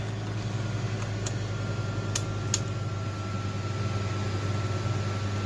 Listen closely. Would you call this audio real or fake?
real